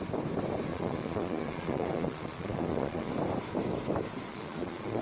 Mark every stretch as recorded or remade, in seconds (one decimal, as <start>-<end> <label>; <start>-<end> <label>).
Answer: 0.0-0.7 recorded; 0.7-3.1 remade; 3.1-4.3 recorded; 4.3-5.0 remade